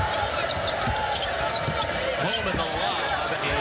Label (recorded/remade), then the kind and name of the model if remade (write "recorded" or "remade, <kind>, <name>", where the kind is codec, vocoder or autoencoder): remade, vocoder, BigVGAN v2